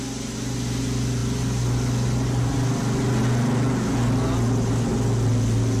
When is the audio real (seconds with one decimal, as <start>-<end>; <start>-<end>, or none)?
0.0-5.8